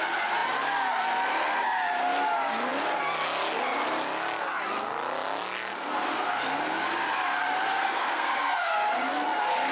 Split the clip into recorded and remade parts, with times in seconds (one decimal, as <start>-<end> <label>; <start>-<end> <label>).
0.0-7.7 recorded; 7.7-8.7 remade; 8.7-9.7 recorded